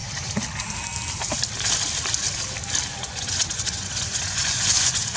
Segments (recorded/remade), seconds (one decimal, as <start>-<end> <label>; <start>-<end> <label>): 0.0-2.9 recorded; 2.9-5.2 remade